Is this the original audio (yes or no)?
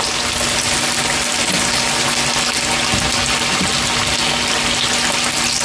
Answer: yes